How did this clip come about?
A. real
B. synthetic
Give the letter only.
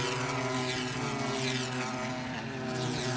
A